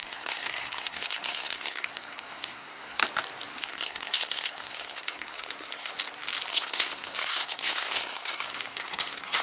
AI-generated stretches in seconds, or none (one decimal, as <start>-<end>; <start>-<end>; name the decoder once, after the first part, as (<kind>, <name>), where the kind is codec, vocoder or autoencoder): 0.0-3.0 (codec, SNAC); 3.5-5.9; 6.5-9.4

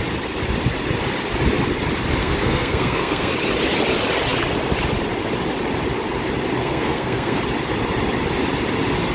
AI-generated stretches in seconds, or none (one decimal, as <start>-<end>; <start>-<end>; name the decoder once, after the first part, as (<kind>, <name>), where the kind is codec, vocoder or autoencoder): 2.2-3.3 (codec, SNAC); 6.6-7.4

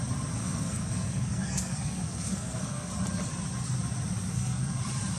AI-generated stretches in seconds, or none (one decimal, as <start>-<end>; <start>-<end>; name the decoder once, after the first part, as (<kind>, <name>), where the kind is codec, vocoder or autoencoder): 0.4-2.9 (codec, SNAC); 4.3-4.8

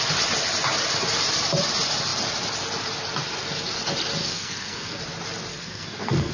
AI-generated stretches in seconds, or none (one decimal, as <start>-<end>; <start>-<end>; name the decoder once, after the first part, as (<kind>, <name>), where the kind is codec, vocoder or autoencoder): 4.2-5.0 (codec, SNAC); 5.5-6.3

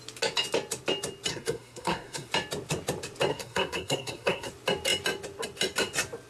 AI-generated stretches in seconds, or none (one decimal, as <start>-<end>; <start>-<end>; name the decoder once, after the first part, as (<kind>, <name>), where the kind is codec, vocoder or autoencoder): 1.3-2.3 (codec, SNAC); 3.3-4.5

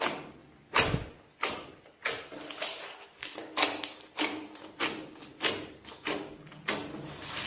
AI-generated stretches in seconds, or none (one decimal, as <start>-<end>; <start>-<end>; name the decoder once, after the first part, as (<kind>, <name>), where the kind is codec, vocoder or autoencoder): none

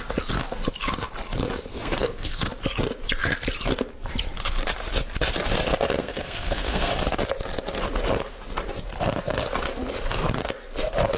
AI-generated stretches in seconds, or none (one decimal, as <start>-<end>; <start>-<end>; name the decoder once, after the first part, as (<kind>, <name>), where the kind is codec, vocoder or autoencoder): 1.7-2.5 (codec, SNAC); 6.0-6.9

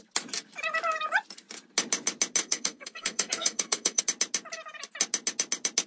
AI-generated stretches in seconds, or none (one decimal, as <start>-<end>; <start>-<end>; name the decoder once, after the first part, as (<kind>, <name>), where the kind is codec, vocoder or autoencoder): 2.4-4.0 (codec, SNAC)